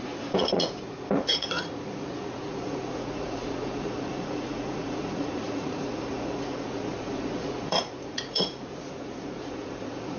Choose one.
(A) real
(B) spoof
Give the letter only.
B